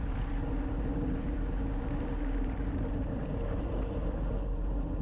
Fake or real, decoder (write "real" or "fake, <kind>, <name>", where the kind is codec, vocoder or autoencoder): real